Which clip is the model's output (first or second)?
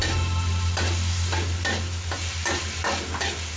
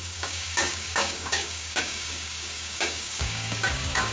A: second